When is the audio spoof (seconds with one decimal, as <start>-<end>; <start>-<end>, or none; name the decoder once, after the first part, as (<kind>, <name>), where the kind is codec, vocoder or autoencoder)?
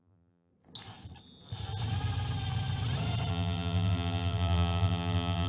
0.0-0.5 (vocoder, BigVGAN v2); 3.3-5.5